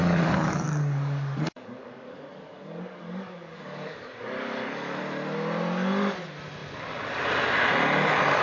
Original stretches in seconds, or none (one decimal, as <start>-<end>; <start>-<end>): 5.0-8.4